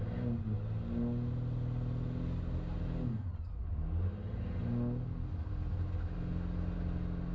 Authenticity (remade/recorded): recorded